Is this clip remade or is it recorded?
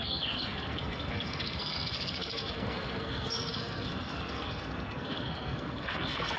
remade